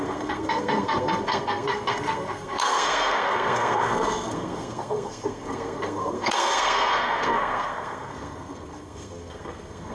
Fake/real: fake